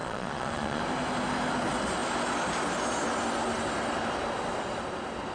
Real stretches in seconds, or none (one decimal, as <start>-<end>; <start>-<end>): 0.8-5.3